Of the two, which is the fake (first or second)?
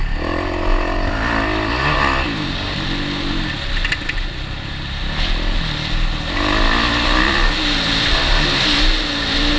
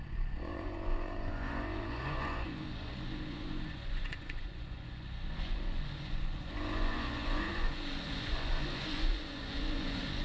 second